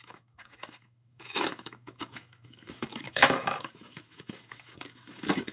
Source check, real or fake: fake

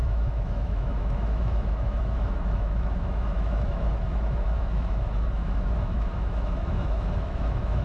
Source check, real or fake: fake